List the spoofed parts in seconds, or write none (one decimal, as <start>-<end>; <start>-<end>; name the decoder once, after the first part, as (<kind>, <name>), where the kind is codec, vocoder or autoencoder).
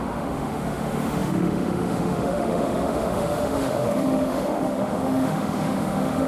0.0-6.3 (autoencoder, DAC-VAE)